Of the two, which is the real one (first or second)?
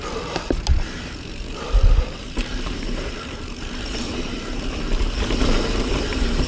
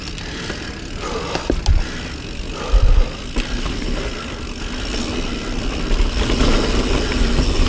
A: second